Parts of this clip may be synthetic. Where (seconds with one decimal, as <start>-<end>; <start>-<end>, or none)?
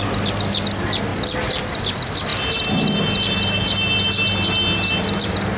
none